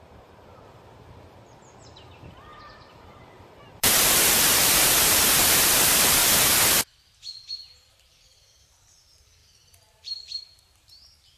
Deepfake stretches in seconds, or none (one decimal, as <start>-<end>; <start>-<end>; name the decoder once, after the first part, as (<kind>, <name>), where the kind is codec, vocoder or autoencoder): 0.0-6.2 (vocoder, BigVGAN v2); 7.5-11.4